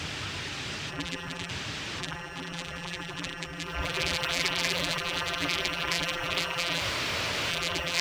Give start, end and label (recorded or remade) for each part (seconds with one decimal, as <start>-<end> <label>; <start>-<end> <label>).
0.0-0.9 recorded; 0.9-1.5 remade; 1.5-2.0 recorded; 2.0-6.8 remade; 6.8-7.5 recorded; 7.5-8.0 remade